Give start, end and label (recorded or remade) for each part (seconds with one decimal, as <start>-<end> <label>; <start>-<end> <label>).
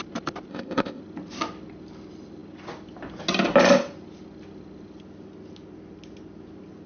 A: 0.0-0.5 recorded; 0.5-1.0 remade; 1.0-6.9 recorded